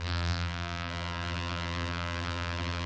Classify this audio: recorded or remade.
remade